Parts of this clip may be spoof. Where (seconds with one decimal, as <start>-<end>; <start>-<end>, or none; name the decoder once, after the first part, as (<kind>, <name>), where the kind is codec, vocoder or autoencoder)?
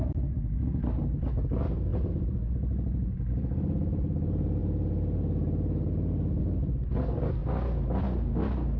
none